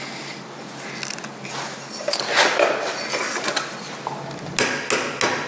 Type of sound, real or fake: real